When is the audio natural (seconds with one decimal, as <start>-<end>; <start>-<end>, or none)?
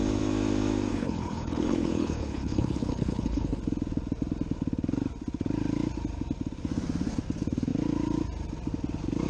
0.0-0.9; 3.6-9.3